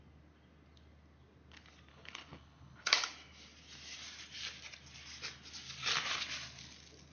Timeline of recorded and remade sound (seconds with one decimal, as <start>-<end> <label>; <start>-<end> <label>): 0.0-1.9 recorded; 1.9-2.9 remade; 2.9-7.1 recorded

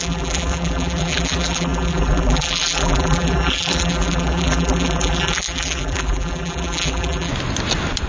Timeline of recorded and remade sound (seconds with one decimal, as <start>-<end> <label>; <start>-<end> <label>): 0.0-7.3 remade; 7.3-8.1 recorded

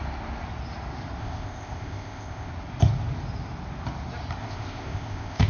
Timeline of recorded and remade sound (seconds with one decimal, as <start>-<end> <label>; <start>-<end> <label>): 0.0-1.2 recorded; 1.2-2.5 remade; 2.5-4.4 recorded; 4.4-5.5 remade

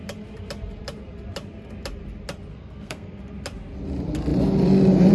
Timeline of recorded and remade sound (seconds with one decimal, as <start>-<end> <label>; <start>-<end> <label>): 0.0-2.5 recorded; 2.5-3.2 remade; 3.2-5.1 recorded

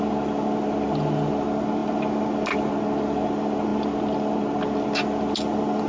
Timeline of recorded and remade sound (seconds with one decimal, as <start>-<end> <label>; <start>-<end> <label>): 0.0-5.9 recorded

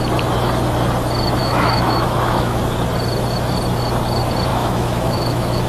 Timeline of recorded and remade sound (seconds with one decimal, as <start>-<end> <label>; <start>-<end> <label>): 0.0-1.4 recorded; 1.4-2.6 remade; 2.6-4.5 recorded; 4.5-5.7 remade